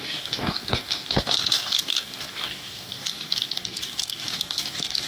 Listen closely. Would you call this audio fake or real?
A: fake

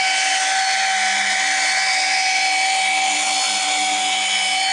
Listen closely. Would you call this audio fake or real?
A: real